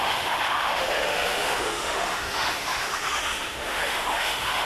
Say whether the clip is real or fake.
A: fake